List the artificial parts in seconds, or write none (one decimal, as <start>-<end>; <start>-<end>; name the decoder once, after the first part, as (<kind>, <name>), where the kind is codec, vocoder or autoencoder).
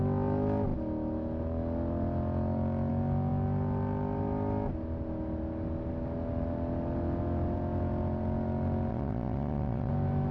8.9-9.9 (vocoder, Vocos)